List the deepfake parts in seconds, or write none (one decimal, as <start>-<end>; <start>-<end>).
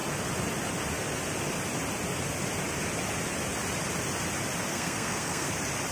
4.7-5.5